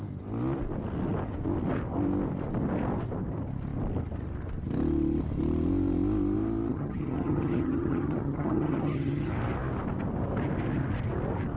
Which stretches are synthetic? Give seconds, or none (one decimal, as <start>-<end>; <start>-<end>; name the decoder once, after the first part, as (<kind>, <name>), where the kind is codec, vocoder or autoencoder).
6.7-9.3 (vocoder, HiFi-GAN)

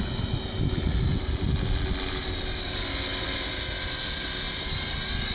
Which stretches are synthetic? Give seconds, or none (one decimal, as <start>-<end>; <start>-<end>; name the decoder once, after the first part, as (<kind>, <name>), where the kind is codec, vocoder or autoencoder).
none